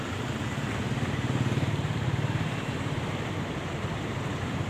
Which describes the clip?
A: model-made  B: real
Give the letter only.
B